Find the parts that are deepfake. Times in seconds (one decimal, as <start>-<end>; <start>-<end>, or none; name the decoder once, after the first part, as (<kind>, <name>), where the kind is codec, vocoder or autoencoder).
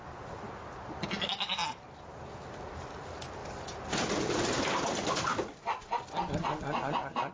none